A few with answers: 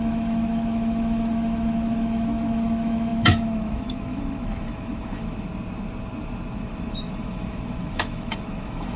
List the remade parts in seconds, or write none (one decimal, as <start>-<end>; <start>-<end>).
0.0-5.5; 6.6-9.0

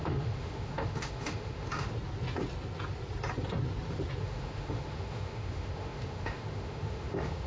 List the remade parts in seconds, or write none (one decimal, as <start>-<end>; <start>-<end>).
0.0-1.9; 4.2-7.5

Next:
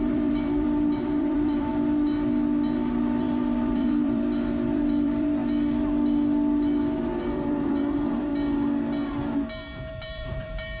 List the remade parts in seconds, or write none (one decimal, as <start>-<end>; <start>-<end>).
0.0-1.7; 3.2-5.4; 7.2-8.3; 9.9-10.8

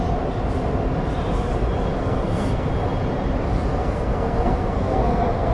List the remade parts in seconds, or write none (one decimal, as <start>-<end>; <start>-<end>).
2.0-2.7; 3.8-5.5

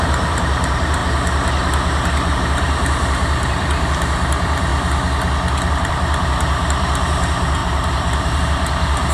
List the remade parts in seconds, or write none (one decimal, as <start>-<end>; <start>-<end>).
0.0-1.0; 2.3-4.7; 5.7-9.1

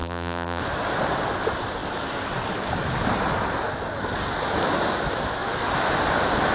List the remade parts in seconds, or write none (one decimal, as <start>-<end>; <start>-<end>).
0.0-0.6